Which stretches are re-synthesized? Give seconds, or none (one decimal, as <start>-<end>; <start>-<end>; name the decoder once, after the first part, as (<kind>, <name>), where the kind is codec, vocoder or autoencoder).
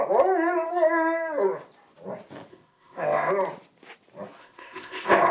2.5-3.3 (codec, ZipCodec); 4.4-5.3